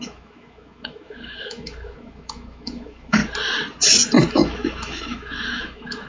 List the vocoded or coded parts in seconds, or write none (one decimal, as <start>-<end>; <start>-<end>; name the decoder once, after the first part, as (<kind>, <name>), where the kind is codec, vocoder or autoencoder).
0.0-3.2 (autoencoder, DAC-VAE); 4.3-6.1